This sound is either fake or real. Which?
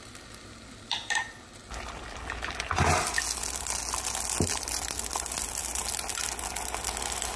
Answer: real